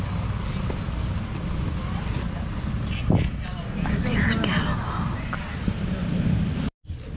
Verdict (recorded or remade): recorded